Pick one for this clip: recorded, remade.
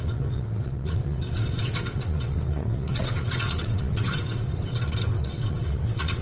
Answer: remade